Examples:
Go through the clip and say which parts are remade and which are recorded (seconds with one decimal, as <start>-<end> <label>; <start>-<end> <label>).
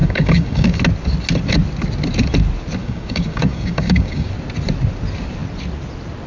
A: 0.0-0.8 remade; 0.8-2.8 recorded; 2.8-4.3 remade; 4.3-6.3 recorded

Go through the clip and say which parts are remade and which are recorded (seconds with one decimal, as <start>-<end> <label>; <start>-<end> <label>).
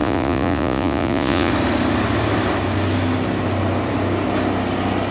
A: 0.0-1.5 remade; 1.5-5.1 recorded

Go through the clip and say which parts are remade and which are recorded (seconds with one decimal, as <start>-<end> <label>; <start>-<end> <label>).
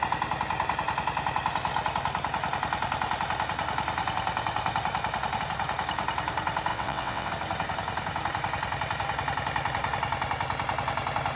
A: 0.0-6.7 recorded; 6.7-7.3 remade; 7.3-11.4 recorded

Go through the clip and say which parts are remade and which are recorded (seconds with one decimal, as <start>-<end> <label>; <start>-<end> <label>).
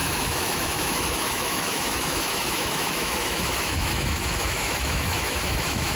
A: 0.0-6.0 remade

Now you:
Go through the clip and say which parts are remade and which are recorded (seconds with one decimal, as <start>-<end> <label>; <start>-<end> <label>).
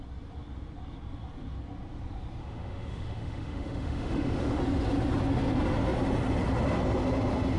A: 0.0-2.4 recorded; 2.4-4.6 remade; 4.6-7.6 recorded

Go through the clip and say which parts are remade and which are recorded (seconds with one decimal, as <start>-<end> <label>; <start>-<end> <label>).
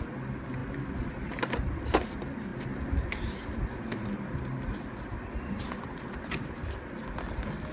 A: 0.0-7.7 recorded